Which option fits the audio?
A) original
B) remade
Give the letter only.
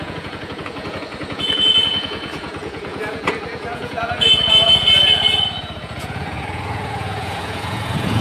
B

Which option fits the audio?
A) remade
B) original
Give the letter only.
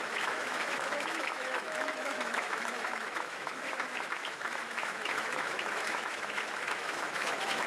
A